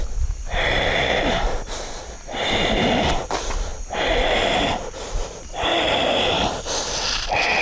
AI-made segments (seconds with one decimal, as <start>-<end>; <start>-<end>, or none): none